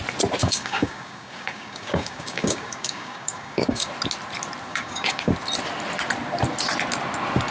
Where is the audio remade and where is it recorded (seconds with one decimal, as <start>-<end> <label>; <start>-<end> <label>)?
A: 0.0-0.4 recorded; 0.4-3.9 remade; 3.9-4.7 recorded; 4.7-5.3 remade; 5.3-7.5 recorded